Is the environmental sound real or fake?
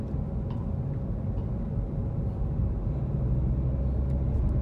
real